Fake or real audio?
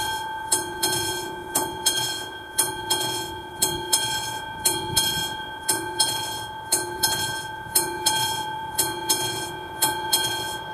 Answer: fake